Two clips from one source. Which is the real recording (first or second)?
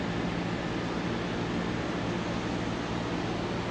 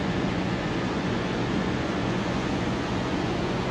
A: first